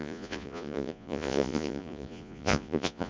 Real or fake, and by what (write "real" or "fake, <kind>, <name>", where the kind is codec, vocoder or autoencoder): fake, vocoder, Vocos